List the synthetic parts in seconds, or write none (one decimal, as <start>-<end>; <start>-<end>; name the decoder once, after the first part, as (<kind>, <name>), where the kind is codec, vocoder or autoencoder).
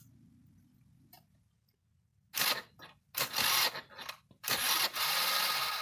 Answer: none